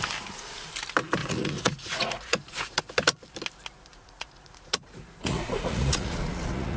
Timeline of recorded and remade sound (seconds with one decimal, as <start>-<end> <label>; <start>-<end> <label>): 0.0-1.2 recorded; 1.2-2.8 remade; 2.8-3.9 recorded; 3.9-6.8 remade